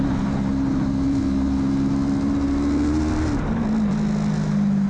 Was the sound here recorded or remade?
recorded